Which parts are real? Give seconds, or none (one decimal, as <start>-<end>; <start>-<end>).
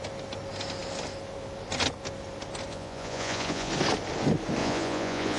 0.0-2.7; 3.7-4.6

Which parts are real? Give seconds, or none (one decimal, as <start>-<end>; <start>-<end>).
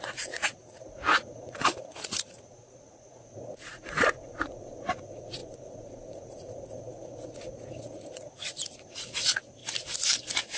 9.6-10.6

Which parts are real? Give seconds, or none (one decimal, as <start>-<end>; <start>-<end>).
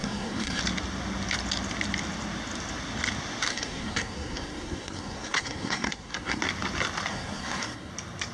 0.6-3.5; 6.4-7.1; 7.9-8.3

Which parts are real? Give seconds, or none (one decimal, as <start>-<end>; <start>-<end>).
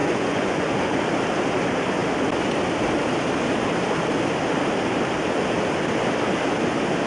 1.0-7.1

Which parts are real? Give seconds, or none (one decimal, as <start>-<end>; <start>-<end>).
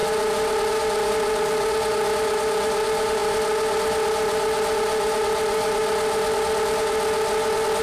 0.0-7.8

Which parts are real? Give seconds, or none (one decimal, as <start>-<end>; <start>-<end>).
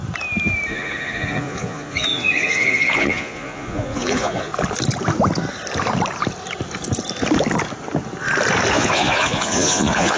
0.0-0.7; 4.5-8.7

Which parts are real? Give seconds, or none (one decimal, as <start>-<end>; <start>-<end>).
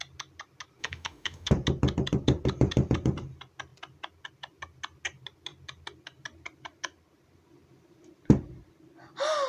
0.0-0.8; 1.5-9.5